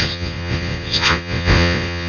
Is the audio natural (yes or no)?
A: no